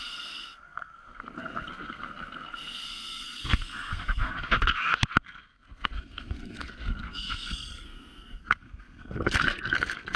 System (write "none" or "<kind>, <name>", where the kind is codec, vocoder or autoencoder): codec, SNAC